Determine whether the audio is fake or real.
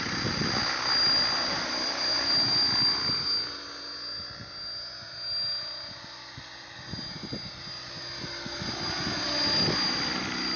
real